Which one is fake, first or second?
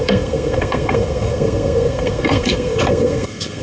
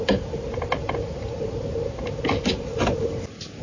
first